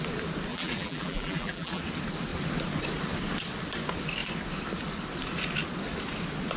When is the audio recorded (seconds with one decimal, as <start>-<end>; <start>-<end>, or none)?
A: 0.0-0.5; 1.8-6.6